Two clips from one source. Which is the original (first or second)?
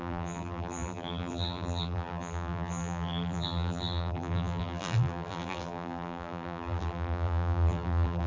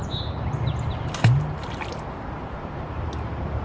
second